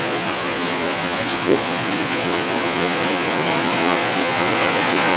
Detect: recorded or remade remade